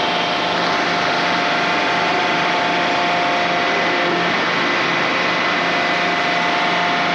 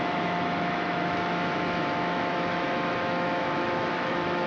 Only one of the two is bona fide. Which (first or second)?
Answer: first